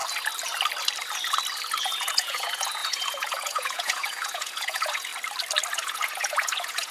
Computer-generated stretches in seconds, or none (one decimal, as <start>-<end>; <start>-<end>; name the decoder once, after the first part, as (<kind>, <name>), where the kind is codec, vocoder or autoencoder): 1.8-5.1 (vocoder, Vocos); 5.7-6.9